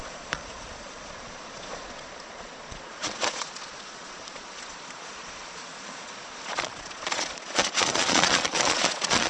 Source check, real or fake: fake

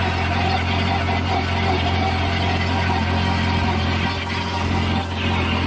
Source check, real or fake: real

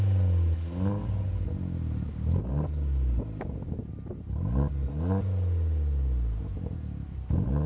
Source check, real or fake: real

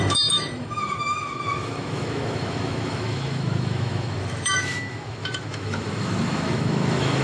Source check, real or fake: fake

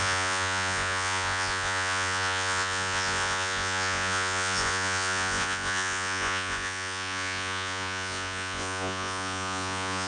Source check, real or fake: fake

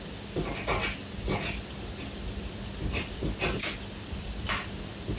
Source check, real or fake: real